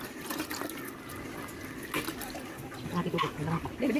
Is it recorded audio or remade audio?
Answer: recorded